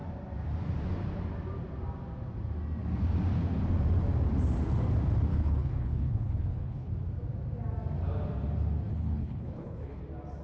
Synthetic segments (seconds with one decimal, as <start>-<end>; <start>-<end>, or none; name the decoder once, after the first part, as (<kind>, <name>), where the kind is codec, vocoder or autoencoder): 5.3-6.9 (codec, HILCodec); 8.9-10.0